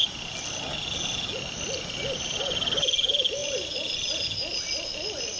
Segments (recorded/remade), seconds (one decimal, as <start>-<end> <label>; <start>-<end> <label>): 0.0-5.4 recorded